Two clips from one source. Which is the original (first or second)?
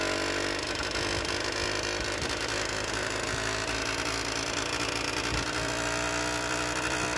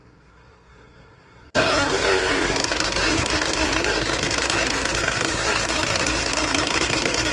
first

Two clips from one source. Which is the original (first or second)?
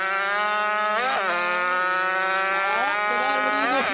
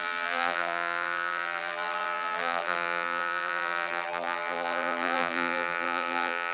first